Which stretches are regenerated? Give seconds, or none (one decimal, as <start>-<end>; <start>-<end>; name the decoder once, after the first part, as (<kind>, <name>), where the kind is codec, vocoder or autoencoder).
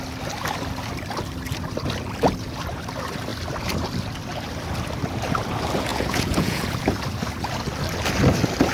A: 5.9-6.8 (vocoder, Vocos)